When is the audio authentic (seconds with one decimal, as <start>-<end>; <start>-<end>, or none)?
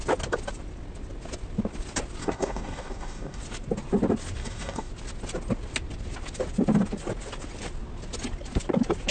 0.0-2.2; 3.4-4.4; 4.9-9.1